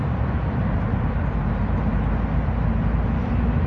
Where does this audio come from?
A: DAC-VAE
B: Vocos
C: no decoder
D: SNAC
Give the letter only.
C